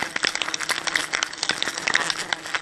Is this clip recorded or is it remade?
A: recorded